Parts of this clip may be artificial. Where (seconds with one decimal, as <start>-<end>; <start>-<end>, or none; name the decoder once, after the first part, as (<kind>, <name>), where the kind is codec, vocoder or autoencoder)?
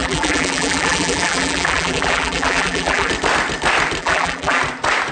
0.0-3.1 (vocoder, BigVGAN v2); 4.0-4.6